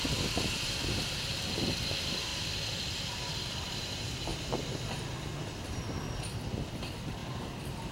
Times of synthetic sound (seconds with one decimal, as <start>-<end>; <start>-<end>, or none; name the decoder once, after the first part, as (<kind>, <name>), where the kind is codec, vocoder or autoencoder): 0.0-4.3 (vocoder, BigVGAN v2); 6.1-7.9